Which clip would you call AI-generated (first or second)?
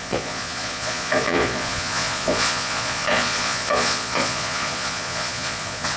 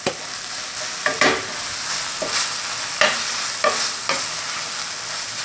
first